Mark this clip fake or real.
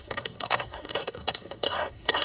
fake